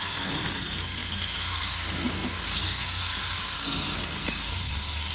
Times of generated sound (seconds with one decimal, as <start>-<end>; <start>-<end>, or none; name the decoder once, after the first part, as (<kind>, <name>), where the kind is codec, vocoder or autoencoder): 0.0-5.1 (codec, SNAC)